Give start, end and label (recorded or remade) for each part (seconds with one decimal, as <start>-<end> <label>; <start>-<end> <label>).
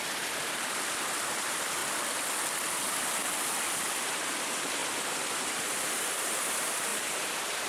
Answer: 0.0-1.8 remade; 1.8-3.8 recorded; 3.8-4.8 remade; 4.8-5.4 recorded; 5.4-7.7 remade